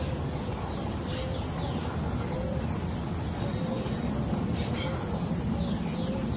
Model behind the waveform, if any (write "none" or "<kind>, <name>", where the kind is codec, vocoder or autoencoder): none